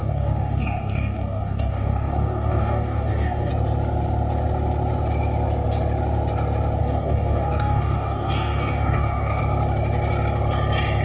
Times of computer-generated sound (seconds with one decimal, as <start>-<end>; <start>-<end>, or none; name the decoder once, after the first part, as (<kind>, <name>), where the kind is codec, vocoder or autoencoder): 0.0-3.5 (codec, DAC); 6.8-9.4